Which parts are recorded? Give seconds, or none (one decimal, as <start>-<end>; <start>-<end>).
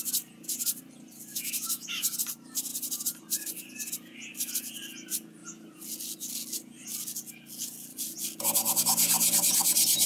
0.0-1.3; 2.0-10.1